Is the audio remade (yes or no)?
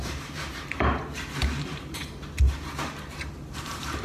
yes